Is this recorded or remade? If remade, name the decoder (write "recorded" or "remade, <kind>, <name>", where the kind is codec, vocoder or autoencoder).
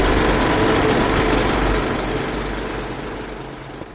recorded